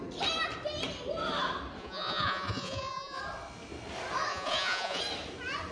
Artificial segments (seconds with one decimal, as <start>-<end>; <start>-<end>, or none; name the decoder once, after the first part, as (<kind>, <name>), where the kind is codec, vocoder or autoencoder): 1.8-3.2 (vocoder, Vocos); 4.3-5.0